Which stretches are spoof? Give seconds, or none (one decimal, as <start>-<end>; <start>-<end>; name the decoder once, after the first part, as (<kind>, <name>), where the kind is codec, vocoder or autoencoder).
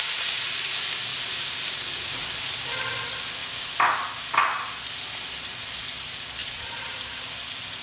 6.4-6.9 (vocoder, Vocos)